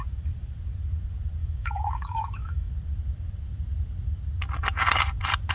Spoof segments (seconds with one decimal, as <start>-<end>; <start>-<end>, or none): 1.4-2.7